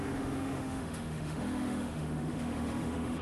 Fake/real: fake